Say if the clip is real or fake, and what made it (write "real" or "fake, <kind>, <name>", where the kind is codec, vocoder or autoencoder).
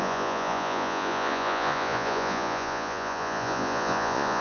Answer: fake, vocoder, Vocos